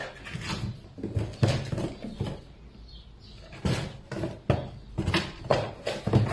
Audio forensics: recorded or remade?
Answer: recorded